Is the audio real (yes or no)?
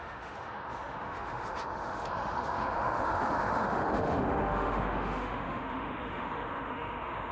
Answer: no